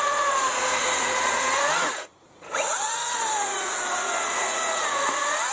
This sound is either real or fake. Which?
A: fake